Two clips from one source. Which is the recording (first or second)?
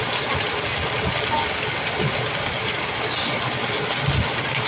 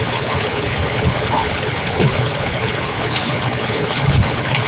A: first